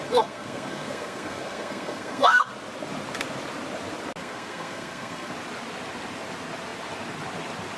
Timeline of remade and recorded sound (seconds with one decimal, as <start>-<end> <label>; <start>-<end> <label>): 0.0-2.5 remade; 2.5-4.2 recorded; 4.2-5.3 remade; 5.3-7.8 recorded